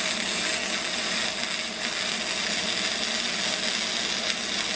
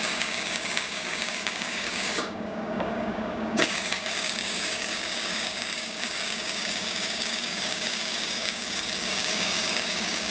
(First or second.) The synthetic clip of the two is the second